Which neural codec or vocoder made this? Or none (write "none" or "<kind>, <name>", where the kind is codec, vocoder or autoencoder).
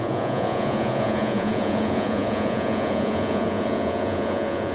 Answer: vocoder, Vocos